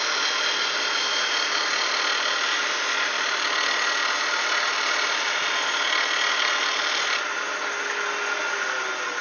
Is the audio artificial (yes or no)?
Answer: no